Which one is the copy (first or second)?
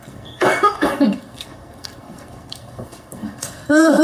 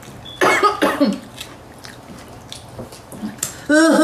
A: first